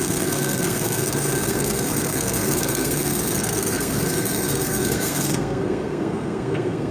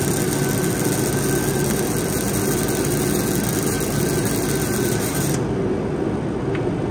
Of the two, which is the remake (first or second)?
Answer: first